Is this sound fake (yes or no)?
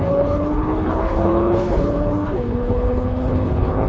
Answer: yes